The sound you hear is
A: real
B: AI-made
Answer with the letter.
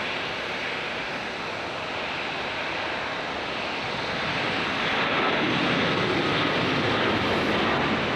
A